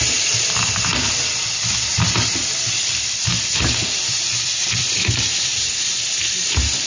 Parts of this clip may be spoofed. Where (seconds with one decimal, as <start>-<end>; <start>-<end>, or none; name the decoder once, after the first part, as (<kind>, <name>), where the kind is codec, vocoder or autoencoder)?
0.0-3.3 (vocoder, BigVGAN v2); 4.0-6.9